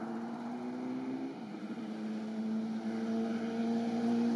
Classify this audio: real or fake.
real